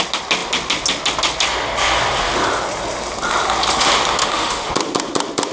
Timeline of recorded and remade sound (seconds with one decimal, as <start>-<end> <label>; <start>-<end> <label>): 0.0-4.2 recorded; 4.2-4.7 remade; 4.7-5.5 recorded